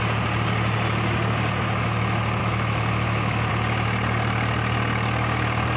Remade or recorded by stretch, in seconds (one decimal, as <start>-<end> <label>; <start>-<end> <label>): 0.0-2.4 recorded; 2.4-3.5 remade; 3.5-5.8 recorded